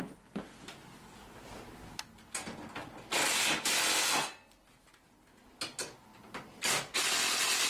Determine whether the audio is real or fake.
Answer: real